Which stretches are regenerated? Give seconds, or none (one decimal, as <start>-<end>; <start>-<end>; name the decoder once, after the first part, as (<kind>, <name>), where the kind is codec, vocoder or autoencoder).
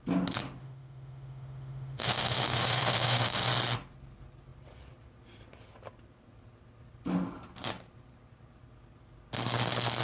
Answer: 0.6-3.5 (autoencoder, DAC-VAE)